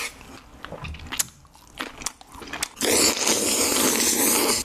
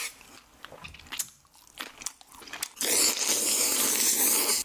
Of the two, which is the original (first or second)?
first